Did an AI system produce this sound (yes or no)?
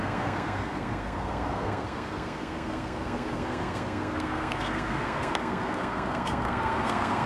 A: yes